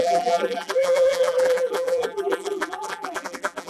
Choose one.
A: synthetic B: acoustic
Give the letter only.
A